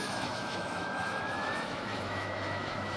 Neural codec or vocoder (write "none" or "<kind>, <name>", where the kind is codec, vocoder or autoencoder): autoencoder, DAC-VAE